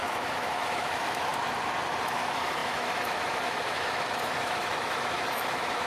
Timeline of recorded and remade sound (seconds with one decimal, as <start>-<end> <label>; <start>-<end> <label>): 0.0-1.3 remade; 1.3-2.0 recorded; 2.0-5.9 remade